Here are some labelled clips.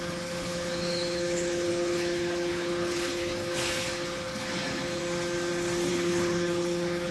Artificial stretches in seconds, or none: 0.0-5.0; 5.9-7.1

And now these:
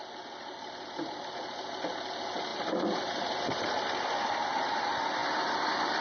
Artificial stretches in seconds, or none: none

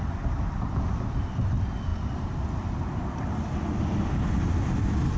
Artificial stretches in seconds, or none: none

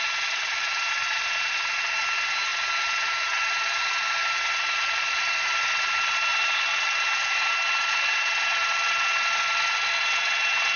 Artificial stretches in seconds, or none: none

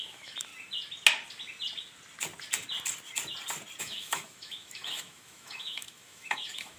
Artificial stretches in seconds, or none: 0.0-0.5; 3.8-6.8

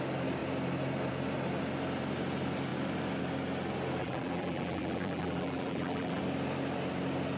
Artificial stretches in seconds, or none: 4.0-6.2

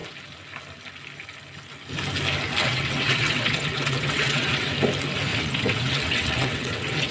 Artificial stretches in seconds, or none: 2.6-4.7; 5.3-7.1

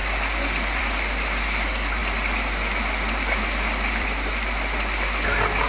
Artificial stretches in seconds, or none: none